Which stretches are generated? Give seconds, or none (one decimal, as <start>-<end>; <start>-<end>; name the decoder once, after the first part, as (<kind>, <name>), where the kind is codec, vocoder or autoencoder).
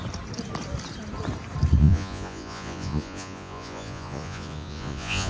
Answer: 1.8-5.3 (vocoder, Vocos)